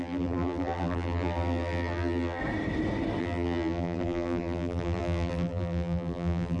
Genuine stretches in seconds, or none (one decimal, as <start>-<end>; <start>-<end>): 2.4-3.2